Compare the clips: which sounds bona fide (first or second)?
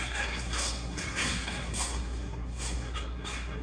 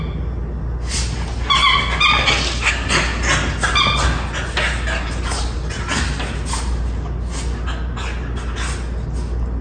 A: second